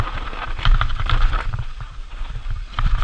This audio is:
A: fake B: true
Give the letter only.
A